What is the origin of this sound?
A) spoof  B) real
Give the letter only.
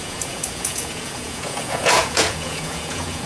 A